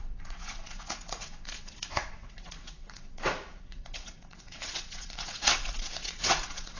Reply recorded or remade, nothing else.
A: remade